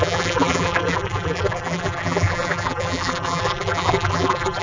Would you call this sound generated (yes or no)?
yes